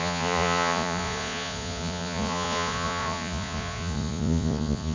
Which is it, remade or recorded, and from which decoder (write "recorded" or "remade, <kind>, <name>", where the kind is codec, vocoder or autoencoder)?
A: remade, vocoder, Vocos